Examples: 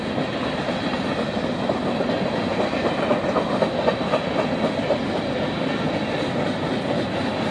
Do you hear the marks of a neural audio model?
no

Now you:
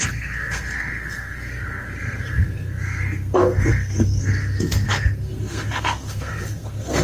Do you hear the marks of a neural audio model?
yes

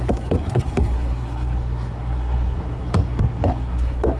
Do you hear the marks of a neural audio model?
yes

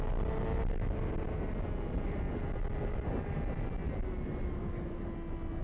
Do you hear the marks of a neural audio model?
no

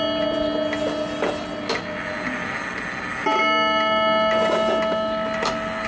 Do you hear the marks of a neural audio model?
no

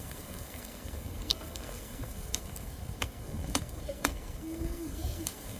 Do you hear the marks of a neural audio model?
yes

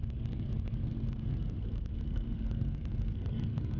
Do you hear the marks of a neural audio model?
yes